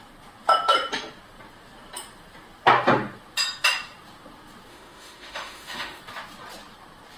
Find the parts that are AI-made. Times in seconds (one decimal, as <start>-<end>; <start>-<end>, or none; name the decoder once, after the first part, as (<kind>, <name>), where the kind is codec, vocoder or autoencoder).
4.7-6.0 (autoencoder, DAC-VAE)